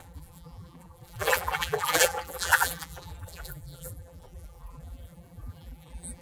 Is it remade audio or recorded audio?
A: remade